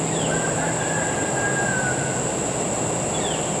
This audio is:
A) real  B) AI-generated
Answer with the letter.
A